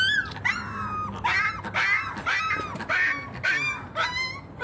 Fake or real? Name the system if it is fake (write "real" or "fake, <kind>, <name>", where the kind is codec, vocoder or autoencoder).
real